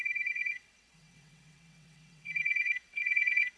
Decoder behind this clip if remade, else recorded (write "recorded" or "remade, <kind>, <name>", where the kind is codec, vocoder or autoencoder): remade, vocoder, WaveNeXt